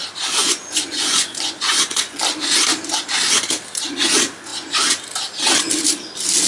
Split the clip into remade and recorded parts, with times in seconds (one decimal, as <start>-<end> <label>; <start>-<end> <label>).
0.0-0.4 recorded; 0.4-2.2 remade; 2.2-6.5 recorded

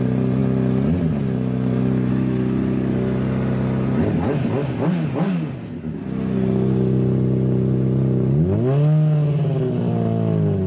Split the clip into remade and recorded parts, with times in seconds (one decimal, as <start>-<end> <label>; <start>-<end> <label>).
0.0-10.7 recorded

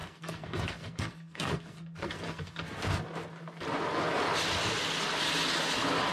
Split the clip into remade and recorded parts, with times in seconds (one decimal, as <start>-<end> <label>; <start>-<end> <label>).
0.0-2.9 remade; 2.9-6.1 recorded

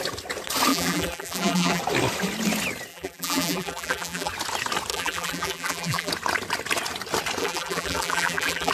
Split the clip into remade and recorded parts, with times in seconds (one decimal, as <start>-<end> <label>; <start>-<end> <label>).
0.0-0.7 recorded; 0.7-1.8 remade; 1.8-2.9 recorded; 2.9-4.3 remade; 4.3-4.9 recorded; 4.9-6.1 remade; 6.1-7.4 recorded; 7.4-8.7 remade

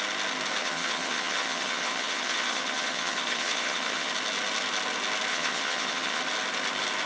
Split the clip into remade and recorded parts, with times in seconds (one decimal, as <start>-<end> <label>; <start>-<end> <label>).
0.0-0.6 recorded; 0.6-4.1 remade; 4.1-5.3 recorded; 5.3-6.2 remade; 6.2-7.1 recorded

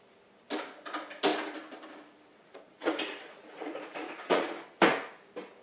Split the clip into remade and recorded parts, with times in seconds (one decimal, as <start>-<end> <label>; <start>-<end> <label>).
0.0-2.3 recorded; 2.3-4.5 remade; 4.5-5.6 recorded

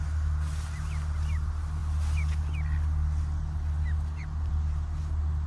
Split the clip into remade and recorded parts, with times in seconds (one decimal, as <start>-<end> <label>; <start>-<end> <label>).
0.0-5.5 recorded